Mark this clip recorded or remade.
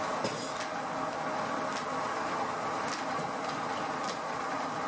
recorded